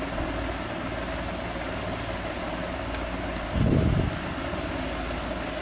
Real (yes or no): yes